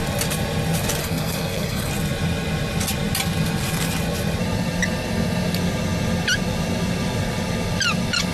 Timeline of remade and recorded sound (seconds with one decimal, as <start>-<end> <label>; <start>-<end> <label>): 0.0-1.0 recorded; 1.0-1.9 remade; 1.9-8.3 recorded